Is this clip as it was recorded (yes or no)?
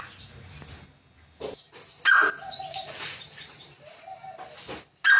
yes